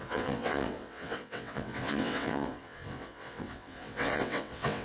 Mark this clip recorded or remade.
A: remade